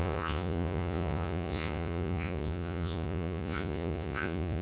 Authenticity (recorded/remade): remade